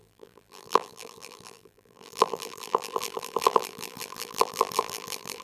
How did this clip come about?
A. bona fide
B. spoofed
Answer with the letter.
B